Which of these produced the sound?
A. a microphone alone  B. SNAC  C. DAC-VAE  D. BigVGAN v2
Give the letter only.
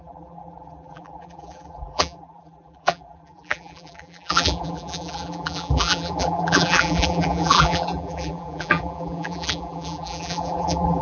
D